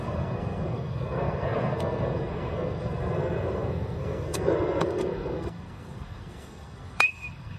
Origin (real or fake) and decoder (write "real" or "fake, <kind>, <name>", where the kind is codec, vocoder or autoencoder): fake, codec, SNAC